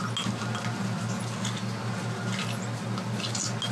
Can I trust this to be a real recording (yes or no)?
yes